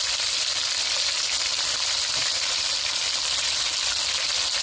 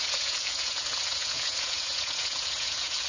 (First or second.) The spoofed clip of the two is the second